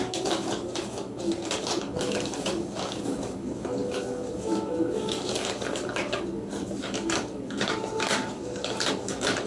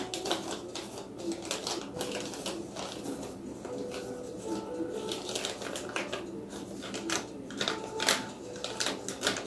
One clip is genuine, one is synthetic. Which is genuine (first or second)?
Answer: second